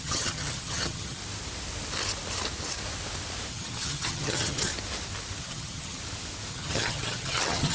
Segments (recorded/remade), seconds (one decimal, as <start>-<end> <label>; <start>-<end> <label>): 0.0-1.2 remade; 1.2-3.5 recorded; 3.5-4.7 remade; 4.7-5.4 recorded; 5.4-6.0 remade; 6.0-6.5 recorded; 6.5-7.7 remade